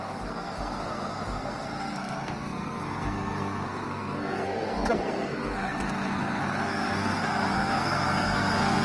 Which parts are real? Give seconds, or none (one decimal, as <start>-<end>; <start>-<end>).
none